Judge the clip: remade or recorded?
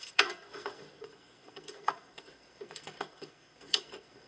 remade